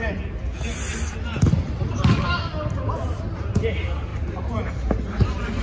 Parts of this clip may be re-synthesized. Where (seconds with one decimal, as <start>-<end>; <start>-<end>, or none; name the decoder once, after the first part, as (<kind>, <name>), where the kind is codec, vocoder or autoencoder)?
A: 4.1-5.6 (vocoder, BigVGAN v2)